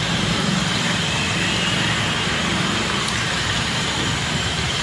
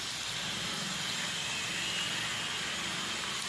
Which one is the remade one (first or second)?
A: first